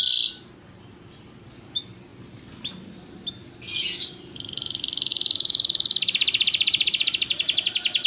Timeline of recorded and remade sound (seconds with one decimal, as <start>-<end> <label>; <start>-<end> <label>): 0.0-5.1 recorded; 5.1-7.6 remade; 7.6-8.1 recorded